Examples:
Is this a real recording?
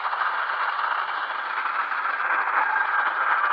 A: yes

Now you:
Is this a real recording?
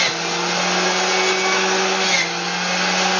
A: yes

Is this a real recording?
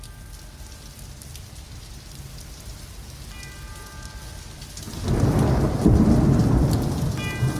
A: yes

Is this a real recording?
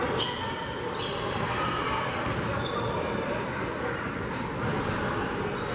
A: no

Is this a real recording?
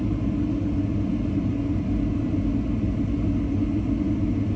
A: yes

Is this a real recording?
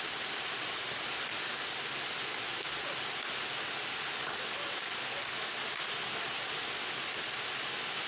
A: yes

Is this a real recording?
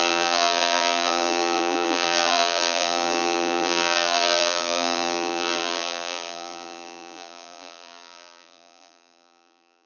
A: no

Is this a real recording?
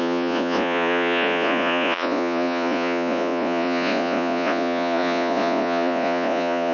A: no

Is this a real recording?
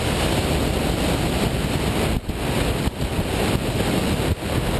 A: yes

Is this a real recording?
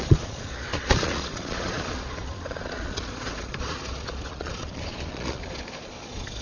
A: no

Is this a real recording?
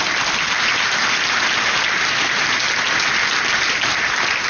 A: yes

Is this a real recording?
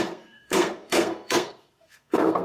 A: no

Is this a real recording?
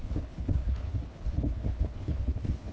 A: no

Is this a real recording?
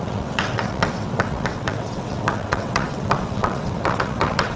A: no